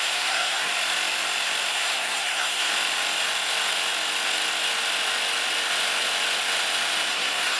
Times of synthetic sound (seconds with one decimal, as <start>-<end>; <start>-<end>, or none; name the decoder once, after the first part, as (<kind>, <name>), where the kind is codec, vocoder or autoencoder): 0.0-0.7 (codec, SNAC); 1.7-2.7; 7.1-7.6